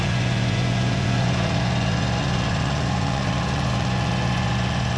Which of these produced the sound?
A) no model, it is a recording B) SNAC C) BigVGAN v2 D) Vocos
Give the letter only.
D